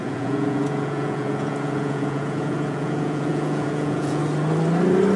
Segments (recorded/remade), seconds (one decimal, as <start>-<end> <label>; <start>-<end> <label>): 0.0-4.2 remade; 4.2-5.2 recorded